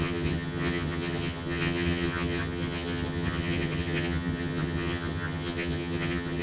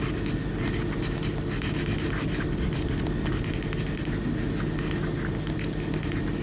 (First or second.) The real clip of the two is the second